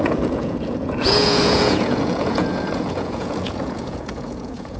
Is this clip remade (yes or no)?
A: yes